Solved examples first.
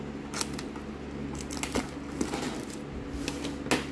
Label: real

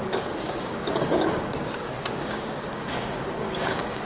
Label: fake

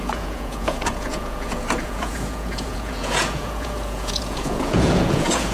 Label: fake